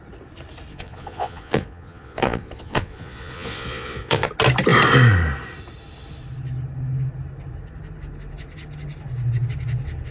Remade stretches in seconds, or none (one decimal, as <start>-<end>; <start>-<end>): 0.7-4.3